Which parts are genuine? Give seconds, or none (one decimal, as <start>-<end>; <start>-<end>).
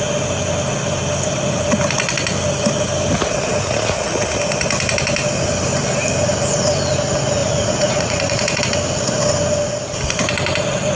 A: 0.0-7.4; 8.6-10.9